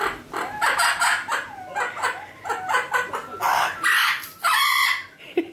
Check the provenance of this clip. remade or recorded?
recorded